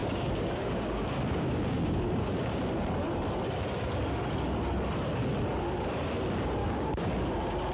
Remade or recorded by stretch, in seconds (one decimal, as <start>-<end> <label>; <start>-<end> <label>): 0.0-2.6 remade; 2.6-6.6 recorded; 6.6-7.1 remade; 7.1-7.7 recorded